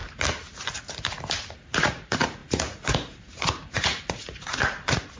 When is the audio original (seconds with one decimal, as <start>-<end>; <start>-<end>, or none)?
0.0-1.6